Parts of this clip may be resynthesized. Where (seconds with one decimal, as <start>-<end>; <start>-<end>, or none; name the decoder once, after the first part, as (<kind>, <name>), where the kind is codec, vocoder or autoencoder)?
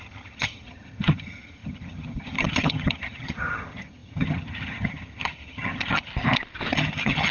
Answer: 0.0-6.1 (vocoder, HiFi-GAN); 6.7-7.3